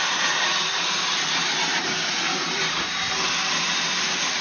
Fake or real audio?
fake